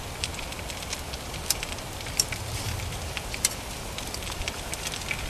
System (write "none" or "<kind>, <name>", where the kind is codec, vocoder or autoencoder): vocoder, BigVGAN v2